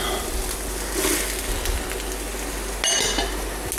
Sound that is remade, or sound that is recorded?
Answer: recorded